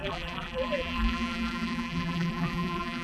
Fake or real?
fake